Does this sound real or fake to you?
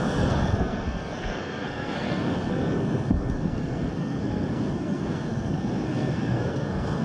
fake